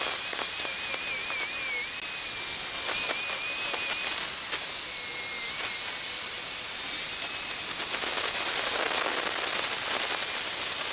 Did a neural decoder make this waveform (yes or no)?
no